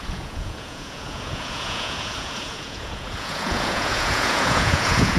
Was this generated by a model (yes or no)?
yes